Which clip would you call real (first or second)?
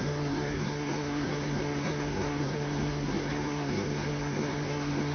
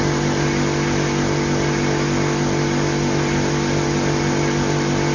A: second